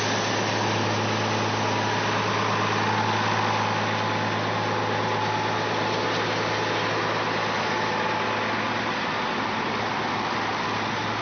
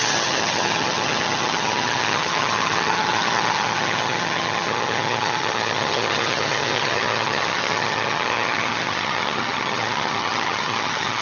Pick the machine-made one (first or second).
second